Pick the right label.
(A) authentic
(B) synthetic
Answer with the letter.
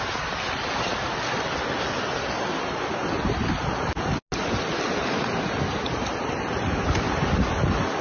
A